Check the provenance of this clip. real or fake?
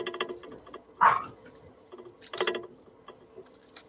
real